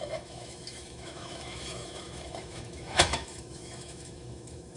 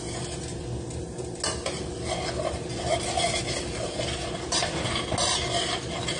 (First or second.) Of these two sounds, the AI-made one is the first